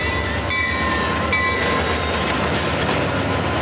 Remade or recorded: recorded